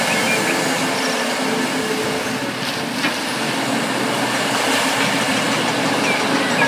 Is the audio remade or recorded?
recorded